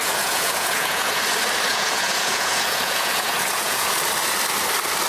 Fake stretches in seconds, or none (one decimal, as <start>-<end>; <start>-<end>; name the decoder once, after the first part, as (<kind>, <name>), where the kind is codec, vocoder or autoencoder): 0.0-1.2 (vocoder, Vocos); 1.7-3.9